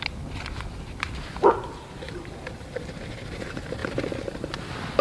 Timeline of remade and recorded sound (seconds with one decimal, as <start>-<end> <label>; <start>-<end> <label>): 0.0-5.0 recorded